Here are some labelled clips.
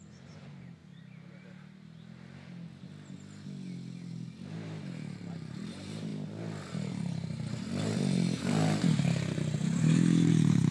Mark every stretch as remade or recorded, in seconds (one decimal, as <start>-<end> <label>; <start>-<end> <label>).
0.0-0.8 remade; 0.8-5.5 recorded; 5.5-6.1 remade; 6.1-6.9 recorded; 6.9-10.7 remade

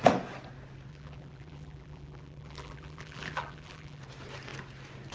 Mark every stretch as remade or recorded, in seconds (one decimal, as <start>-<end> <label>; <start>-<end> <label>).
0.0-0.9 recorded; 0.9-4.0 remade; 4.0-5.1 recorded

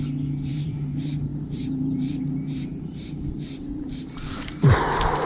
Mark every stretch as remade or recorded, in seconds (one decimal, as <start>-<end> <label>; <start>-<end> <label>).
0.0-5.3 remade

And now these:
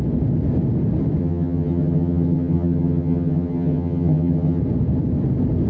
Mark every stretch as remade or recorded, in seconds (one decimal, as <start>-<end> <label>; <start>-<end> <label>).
0.0-1.2 recorded; 1.2-4.6 remade; 4.6-5.7 recorded

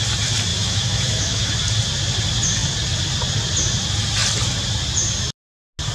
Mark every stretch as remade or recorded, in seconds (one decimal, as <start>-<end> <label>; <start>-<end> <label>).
0.0-0.5 recorded; 0.5-1.5 remade; 1.5-5.9 recorded

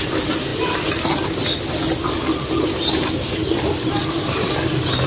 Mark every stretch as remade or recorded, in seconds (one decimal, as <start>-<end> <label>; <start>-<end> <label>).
0.0-3.4 recorded; 3.4-4.3 remade; 4.3-5.1 recorded

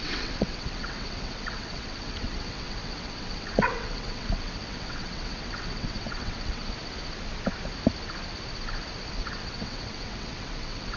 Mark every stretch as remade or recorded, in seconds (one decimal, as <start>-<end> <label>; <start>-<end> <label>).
0.0-6.6 remade; 6.6-9.1 recorded; 9.1-11.0 remade